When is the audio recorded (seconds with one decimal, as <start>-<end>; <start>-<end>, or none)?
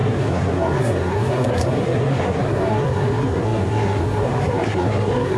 none